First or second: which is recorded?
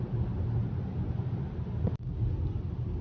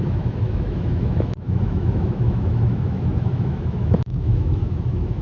first